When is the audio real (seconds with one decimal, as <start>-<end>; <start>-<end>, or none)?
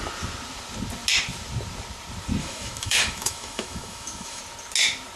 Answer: 0.0-2.4; 4.4-5.2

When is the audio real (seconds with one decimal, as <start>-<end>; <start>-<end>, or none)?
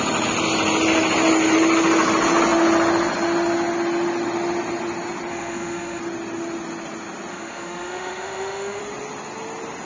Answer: 0.0-5.3; 6.0-7.3; 8.8-9.9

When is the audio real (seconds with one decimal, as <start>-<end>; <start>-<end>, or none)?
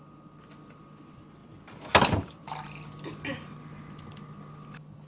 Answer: 0.0-5.1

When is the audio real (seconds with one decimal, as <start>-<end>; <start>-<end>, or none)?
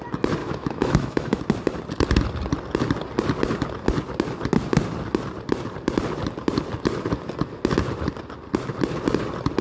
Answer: 0.0-0.4; 1.4-9.6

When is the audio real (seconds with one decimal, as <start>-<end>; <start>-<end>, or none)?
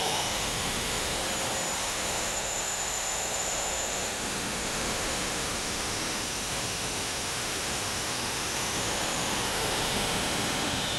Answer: 1.2-1.8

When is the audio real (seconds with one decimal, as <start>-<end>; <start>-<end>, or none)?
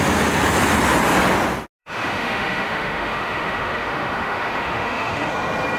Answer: 0.0-1.8; 5.3-5.8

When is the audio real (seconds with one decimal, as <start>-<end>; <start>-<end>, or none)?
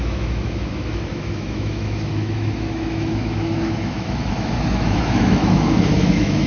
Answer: none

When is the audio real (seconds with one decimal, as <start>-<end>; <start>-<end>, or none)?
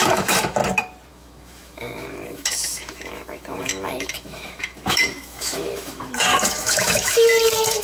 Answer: 0.6-1.1